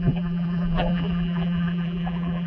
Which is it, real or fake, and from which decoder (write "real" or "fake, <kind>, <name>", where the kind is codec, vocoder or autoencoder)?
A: fake, vocoder, BigVGAN v2